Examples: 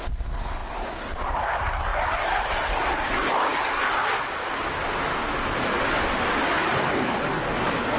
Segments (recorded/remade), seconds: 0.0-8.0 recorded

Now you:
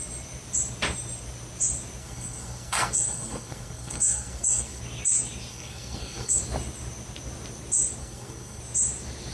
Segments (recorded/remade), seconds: 0.0-2.0 recorded; 2.0-4.8 remade; 4.8-5.5 recorded; 5.5-6.4 remade; 6.4-8.0 recorded; 8.0-8.6 remade; 8.6-9.3 recorded

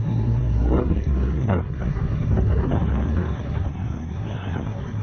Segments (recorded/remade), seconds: 0.0-5.0 remade

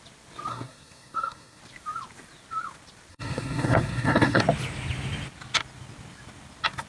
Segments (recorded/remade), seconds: 0.0-0.5 recorded; 0.5-1.6 remade; 1.6-3.1 recorded; 3.1-4.4 remade; 4.4-6.9 recorded